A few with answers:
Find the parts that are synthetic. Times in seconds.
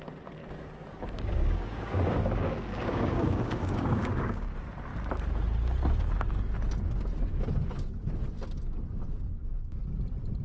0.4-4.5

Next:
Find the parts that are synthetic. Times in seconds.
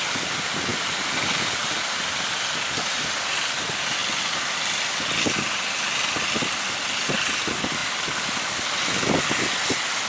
4.0-4.8; 7.8-8.4